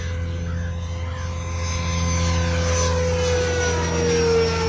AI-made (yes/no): no